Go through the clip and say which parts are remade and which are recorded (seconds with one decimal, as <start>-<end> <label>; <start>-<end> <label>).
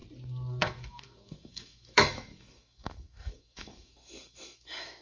0.0-0.6 recorded; 0.6-5.0 remade